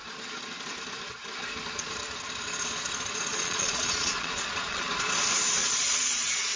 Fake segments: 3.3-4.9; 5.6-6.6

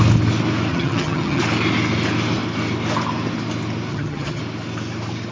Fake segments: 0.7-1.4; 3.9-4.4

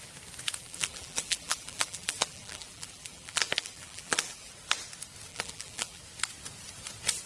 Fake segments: 0.6-4.5; 5.3-6.0

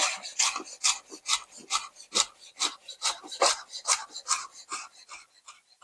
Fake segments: 2.8-4.1

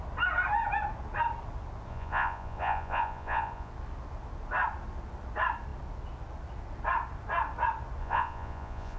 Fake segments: 1.9-3.7; 8.0-9.0